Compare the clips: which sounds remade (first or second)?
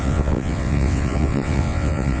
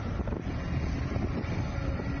first